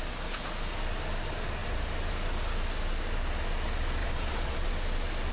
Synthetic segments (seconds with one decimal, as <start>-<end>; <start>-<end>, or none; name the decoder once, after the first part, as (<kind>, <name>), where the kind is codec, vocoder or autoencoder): 1.6-2.1 (vocoder, BigVGAN v2); 4.0-4.7